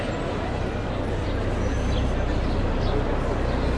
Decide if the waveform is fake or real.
real